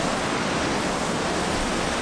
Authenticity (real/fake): real